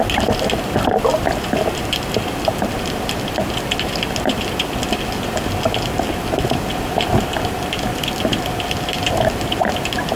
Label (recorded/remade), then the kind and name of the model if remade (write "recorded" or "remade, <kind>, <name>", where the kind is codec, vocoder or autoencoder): recorded